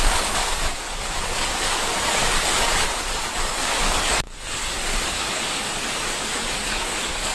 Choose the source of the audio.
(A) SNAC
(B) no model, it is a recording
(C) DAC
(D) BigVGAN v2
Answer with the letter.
C